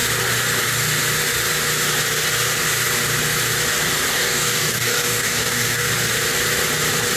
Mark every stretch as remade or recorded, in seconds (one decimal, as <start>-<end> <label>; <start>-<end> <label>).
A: 0.0-4.1 recorded; 4.1-5.9 remade; 5.9-7.2 recorded

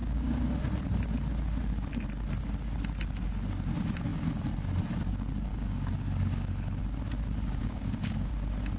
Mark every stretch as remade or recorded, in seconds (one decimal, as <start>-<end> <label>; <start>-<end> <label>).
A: 0.0-0.6 remade; 0.6-5.5 recorded; 5.5-6.8 remade; 6.8-7.6 recorded; 7.6-8.3 remade; 8.3-8.8 recorded

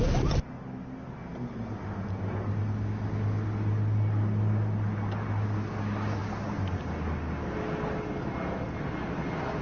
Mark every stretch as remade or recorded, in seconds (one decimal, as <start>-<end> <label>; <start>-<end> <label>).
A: 0.0-9.6 recorded

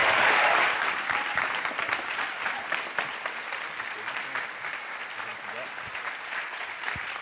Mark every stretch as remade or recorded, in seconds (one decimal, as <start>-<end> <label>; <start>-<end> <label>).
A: 0.0-0.6 remade; 0.6-7.2 recorded

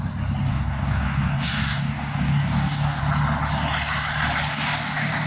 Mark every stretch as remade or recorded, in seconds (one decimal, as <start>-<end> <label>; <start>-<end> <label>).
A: 0.0-0.5 recorded; 0.5-3.0 remade; 3.0-4.5 recorded; 4.5-5.3 remade

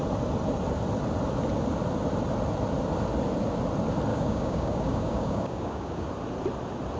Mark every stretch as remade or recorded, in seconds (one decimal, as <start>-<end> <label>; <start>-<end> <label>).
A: 0.0-4.1 recorded; 4.1-6.1 remade; 6.1-7.0 recorded

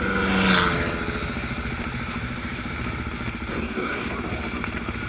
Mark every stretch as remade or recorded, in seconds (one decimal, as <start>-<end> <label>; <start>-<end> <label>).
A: 0.0-3.5 recorded; 3.5-4.1 remade; 4.1-5.1 recorded